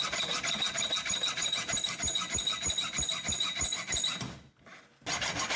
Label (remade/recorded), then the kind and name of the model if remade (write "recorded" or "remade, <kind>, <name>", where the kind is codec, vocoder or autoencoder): recorded